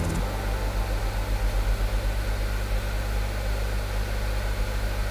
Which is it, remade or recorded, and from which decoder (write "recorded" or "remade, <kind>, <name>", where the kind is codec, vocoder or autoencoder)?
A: recorded